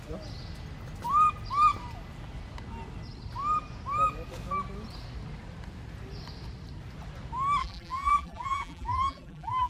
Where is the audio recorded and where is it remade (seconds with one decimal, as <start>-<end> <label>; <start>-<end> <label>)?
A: 0.0-7.6 recorded; 7.6-9.7 remade